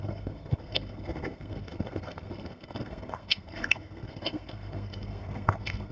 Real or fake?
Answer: fake